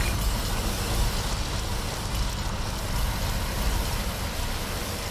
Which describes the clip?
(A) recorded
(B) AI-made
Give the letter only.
A